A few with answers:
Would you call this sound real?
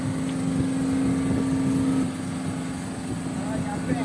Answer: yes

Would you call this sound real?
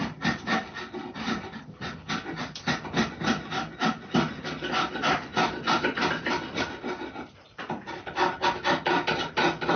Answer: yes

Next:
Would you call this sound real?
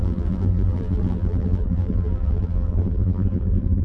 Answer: no